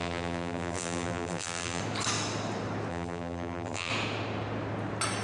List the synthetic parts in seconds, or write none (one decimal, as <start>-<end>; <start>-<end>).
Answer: 0.0-1.8; 2.9-3.9